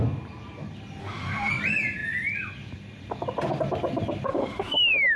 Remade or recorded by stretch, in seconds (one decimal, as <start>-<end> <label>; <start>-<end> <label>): 0.0-1.0 recorded; 1.0-1.5 remade; 1.5-4.3 recorded; 4.3-5.2 remade